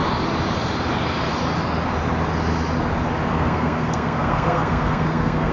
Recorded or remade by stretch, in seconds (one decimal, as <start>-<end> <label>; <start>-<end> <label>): 0.0-3.3 recorded; 3.3-5.5 remade